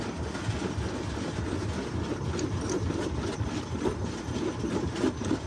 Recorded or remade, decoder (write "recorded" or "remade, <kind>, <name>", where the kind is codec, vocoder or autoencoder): recorded